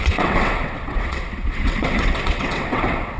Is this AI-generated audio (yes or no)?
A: yes